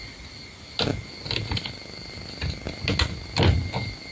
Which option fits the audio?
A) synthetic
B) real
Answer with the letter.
B